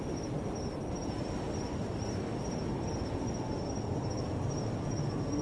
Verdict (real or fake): real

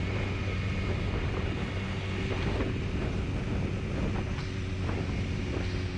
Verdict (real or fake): real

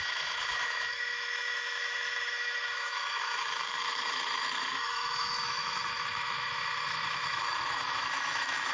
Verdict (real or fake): fake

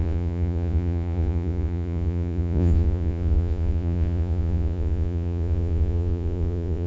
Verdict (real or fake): fake